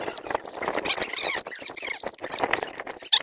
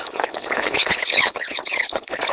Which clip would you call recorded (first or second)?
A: first